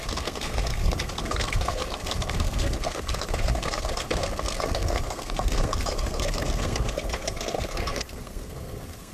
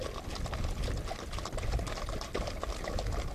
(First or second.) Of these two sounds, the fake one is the first